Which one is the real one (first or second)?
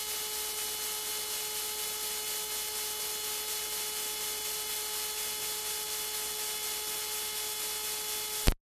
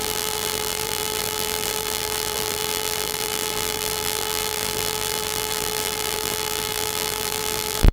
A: first